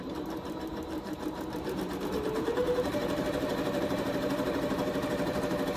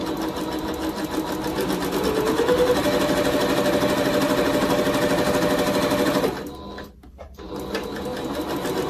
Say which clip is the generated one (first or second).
first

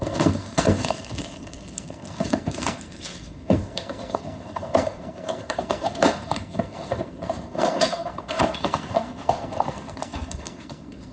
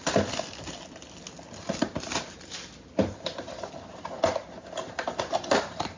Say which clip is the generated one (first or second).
first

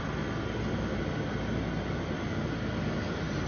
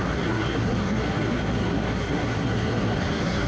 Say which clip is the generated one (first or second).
second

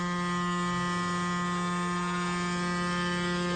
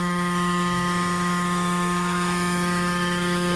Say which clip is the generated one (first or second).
second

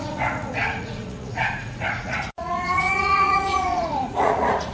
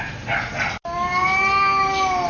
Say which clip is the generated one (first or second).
first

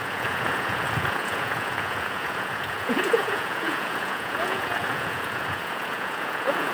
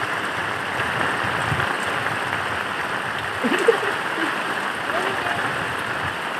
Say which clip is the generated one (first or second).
first